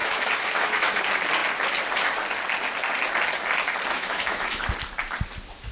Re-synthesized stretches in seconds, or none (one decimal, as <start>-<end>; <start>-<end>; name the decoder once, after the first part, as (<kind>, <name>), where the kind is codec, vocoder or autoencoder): 0.0-1.0 (autoencoder, DAC-VAE); 3.9-4.7